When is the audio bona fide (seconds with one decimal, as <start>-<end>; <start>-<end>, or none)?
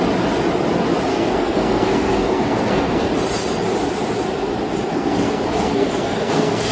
0.0-1.1; 3.1-4.9